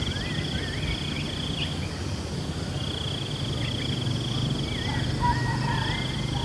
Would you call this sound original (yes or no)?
yes